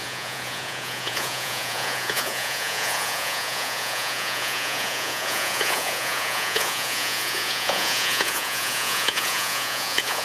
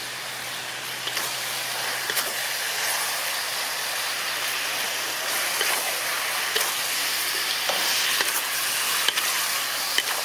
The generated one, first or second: first